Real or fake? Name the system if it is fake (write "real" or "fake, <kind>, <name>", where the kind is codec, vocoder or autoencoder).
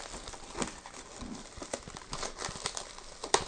real